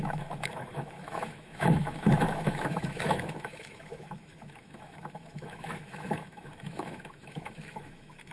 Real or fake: fake